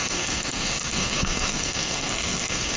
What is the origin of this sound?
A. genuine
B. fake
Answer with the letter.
B